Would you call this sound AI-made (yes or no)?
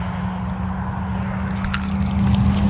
no